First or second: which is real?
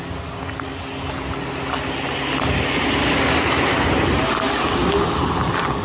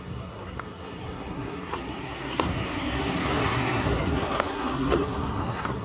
first